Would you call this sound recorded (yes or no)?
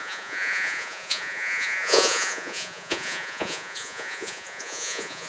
no